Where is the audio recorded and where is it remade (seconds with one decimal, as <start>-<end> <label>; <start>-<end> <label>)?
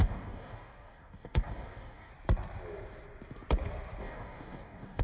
0.0-2.1 remade; 2.1-4.0 recorded; 4.0-5.0 remade